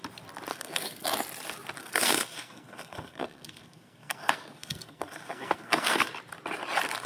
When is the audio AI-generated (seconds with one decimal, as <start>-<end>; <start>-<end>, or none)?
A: 0.5-1.1; 1.8-6.1